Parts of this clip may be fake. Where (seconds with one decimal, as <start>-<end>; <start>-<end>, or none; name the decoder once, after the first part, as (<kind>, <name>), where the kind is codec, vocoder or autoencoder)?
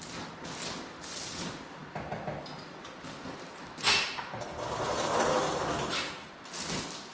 none